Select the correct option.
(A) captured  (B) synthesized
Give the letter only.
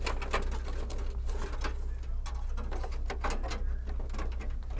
A